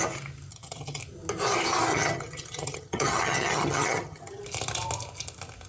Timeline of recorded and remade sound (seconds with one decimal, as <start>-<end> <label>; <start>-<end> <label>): 0.0-0.5 recorded; 0.5-1.0 remade; 1.0-1.9 recorded; 1.9-4.4 remade; 4.4-5.7 recorded